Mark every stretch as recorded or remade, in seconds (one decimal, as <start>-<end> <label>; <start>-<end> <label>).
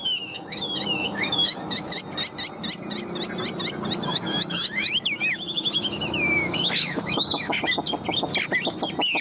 0.0-2.0 remade; 2.0-4.1 recorded; 4.1-7.6 remade; 7.6-9.2 recorded